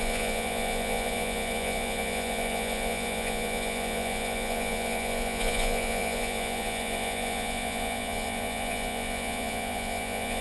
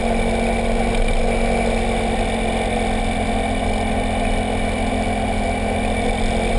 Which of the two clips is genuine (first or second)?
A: second